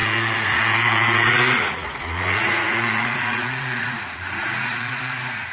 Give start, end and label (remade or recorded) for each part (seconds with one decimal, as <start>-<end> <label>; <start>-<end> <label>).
0.0-5.5 remade